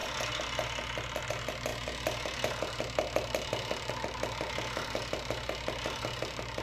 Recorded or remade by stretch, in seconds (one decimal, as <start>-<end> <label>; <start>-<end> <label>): 0.0-6.6 recorded